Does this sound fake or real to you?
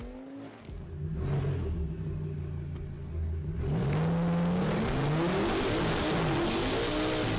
real